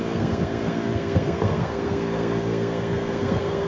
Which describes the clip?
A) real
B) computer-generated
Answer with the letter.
B